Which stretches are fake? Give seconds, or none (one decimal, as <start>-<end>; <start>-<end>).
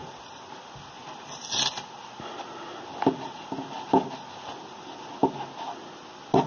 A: none